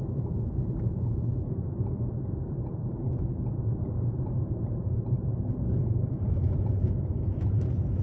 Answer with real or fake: fake